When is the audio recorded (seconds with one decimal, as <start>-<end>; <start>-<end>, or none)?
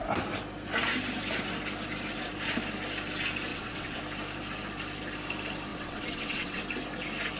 0.0-3.5; 4.0-5.7; 6.6-7.4